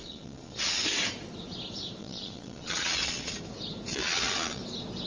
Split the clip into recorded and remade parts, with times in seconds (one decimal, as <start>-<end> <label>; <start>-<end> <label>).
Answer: 0.0-0.8 remade; 0.8-2.0 recorded; 2.0-3.3 remade; 3.3-3.9 recorded; 3.9-4.6 remade; 4.6-5.1 recorded